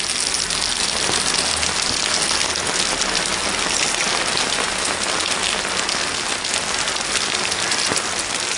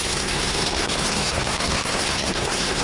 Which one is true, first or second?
first